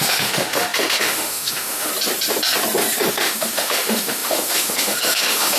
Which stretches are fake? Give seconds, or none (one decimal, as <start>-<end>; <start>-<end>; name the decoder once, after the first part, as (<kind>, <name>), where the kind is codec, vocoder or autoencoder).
0.0-1.9 (autoencoder, DAC-VAE); 3.1-5.6